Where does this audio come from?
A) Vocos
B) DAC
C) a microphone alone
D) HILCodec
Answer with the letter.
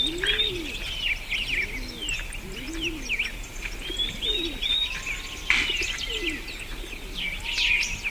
C